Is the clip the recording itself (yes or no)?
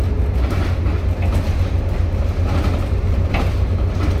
yes